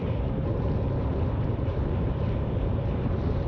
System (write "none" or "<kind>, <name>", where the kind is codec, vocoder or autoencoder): vocoder, BigVGAN v2